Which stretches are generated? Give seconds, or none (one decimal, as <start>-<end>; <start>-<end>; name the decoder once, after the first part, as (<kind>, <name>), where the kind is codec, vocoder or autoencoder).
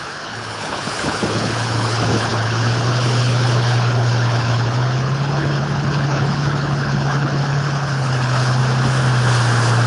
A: 0.0-8.6 (codec, HILCodec)